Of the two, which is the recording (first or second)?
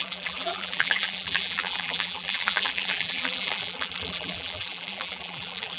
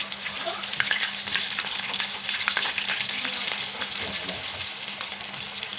second